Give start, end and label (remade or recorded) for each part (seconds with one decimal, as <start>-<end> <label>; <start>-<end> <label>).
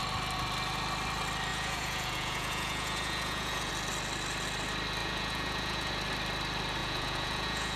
0.0-1.5 recorded; 1.5-3.7 remade; 3.7-5.0 recorded; 5.0-5.9 remade; 5.9-6.8 recorded; 6.8-7.8 remade